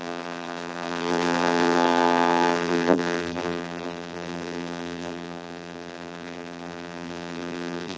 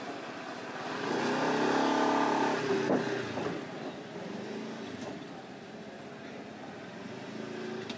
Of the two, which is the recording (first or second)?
second